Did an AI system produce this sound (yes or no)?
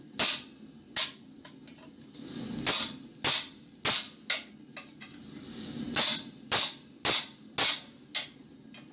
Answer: no